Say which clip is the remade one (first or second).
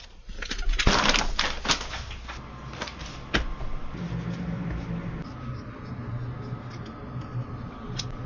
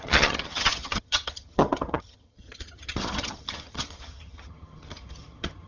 second